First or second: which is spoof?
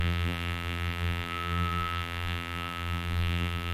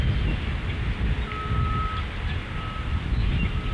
first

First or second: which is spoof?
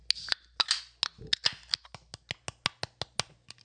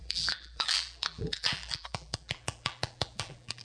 second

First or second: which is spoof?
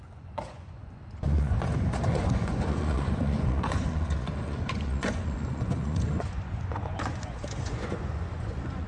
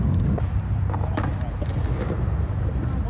first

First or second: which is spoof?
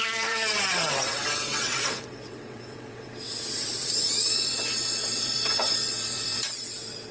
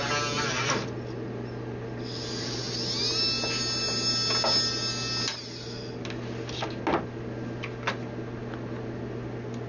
first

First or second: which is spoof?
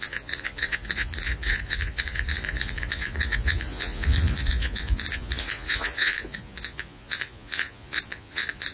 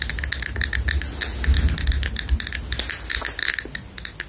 first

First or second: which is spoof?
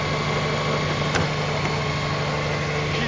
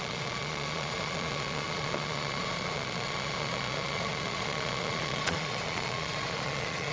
second